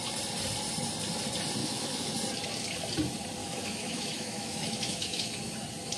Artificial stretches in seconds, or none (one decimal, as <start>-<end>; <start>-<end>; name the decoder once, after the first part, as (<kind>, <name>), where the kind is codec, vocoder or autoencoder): 1.6-2.1 (autoencoder, DAC-VAE); 3.4-5.5